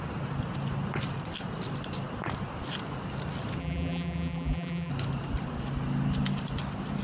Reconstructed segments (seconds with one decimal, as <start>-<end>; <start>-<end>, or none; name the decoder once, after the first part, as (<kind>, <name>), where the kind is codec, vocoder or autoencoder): 3.6-4.9 (vocoder, BigVGAN v2)